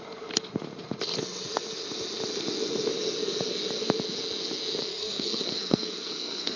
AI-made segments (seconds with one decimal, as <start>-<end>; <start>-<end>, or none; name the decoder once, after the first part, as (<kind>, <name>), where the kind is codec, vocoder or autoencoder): 4.9-6.6 (codec, SNAC)